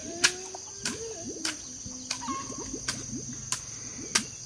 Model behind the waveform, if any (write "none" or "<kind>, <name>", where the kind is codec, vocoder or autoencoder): none